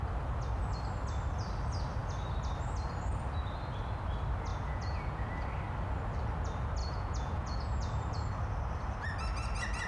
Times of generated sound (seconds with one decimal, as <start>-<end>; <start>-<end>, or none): 4.5-5.3; 6.8-8.3